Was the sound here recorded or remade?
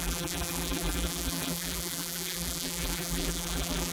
remade